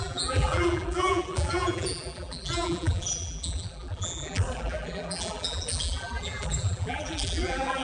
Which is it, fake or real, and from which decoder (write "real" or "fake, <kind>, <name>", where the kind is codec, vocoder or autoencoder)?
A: fake, vocoder, BigVGAN v2